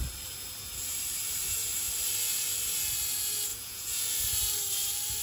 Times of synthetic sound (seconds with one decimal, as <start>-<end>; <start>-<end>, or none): 3.5-4.2